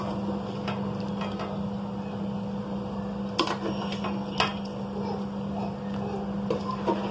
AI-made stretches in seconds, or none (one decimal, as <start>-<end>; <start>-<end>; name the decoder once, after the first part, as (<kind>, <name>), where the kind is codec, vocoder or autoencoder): none